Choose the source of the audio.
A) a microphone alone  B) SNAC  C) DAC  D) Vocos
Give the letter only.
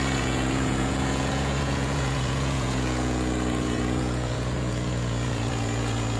D